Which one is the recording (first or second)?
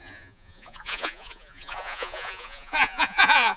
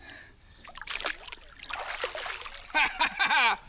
second